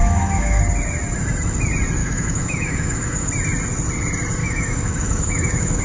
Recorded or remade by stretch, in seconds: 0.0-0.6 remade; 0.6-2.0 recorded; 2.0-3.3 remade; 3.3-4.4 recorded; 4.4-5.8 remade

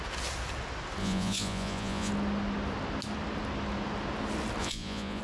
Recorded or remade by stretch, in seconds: 0.0-1.0 recorded; 1.0-2.1 remade; 2.1-4.6 recorded; 4.6-5.2 remade

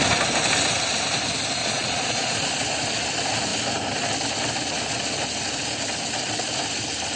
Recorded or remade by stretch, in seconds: 0.0-1.6 recorded; 1.6-2.3 remade; 2.3-7.2 recorded

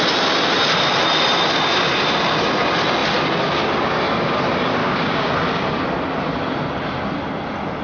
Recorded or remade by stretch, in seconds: 0.0-4.8 recorded; 4.8-5.3 remade; 5.3-7.8 recorded